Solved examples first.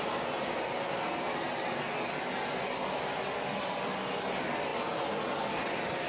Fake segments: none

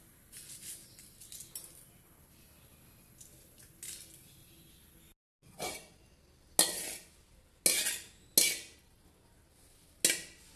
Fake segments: none

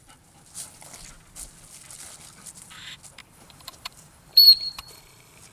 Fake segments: 3.2-5.0 (vocoder, BigVGAN v2)

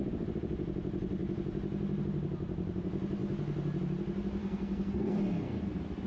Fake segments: 4.4-5.6 (codec, SNAC)

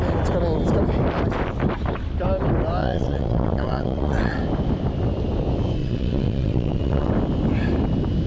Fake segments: 2.8-4.4 (vocoder, WaveNeXt); 5.8-7.1

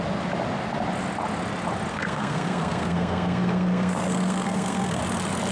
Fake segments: 1.9-5.0 (codec, SNAC)

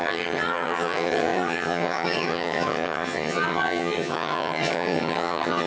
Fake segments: 0.0-5.7 (vocoder, HiFi-GAN)